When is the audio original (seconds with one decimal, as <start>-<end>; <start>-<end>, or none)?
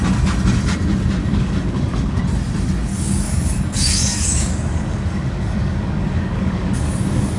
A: 0.0-1.2; 2.2-2.9